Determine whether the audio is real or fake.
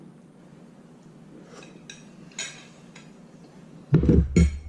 real